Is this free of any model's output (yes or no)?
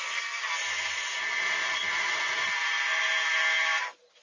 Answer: yes